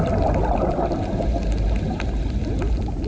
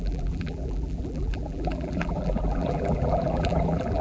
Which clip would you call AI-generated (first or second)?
second